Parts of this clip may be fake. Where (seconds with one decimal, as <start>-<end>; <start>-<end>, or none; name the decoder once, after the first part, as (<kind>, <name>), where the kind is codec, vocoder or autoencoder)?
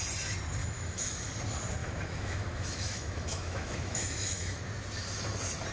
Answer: 0.6-1.3 (autoencoder, DAC-VAE); 1.8-4.6